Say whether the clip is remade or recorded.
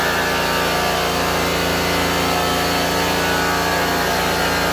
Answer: recorded